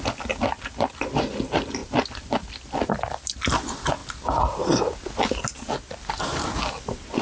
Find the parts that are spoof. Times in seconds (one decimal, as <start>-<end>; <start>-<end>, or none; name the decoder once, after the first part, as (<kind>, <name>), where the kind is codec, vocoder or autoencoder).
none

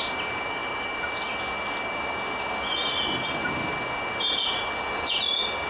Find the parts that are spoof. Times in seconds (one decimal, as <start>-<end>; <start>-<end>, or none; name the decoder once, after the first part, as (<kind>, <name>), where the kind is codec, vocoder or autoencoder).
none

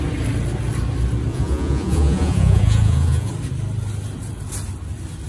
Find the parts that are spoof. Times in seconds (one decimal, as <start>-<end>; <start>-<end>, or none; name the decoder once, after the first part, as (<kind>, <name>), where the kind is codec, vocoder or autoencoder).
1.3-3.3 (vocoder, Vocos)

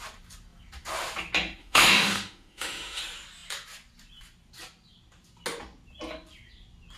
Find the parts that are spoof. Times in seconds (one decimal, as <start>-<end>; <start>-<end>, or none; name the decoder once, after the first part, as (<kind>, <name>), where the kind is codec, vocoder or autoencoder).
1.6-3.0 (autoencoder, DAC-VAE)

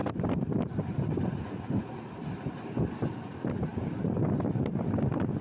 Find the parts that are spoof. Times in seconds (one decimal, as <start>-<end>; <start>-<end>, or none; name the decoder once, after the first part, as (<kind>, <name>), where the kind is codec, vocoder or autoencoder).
none